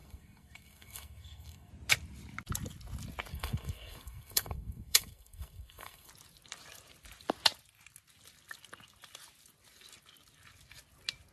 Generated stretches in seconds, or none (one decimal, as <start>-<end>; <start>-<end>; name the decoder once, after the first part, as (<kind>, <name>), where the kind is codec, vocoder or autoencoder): 0.0-1.7 (codec, SNAC); 3.3-6.1